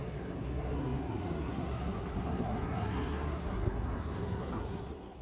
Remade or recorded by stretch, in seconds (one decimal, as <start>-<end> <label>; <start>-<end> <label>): 0.0-5.2 remade